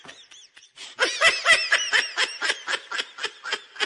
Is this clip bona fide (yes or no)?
yes